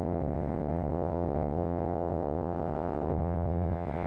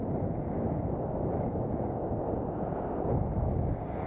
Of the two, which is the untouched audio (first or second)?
second